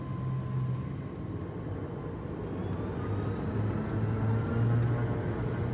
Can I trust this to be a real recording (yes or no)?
yes